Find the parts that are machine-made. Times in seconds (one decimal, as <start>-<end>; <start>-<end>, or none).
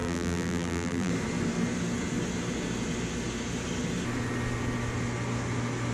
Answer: 0.0-1.1